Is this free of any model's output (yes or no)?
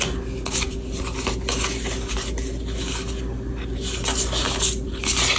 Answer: yes